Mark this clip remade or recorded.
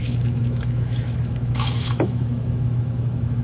remade